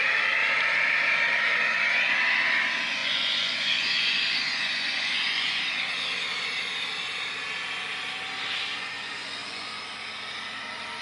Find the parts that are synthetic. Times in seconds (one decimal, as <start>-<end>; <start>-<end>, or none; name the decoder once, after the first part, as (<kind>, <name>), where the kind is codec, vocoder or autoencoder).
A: 3.0-5.6 (vocoder, Vocos); 8.7-9.8